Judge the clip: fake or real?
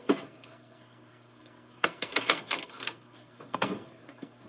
fake